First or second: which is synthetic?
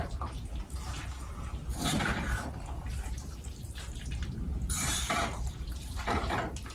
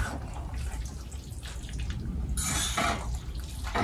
first